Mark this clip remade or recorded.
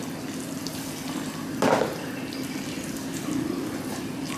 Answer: recorded